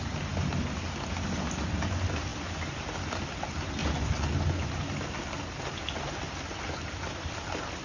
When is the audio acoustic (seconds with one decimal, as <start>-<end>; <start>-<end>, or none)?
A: 0.0-3.8; 4.3-7.8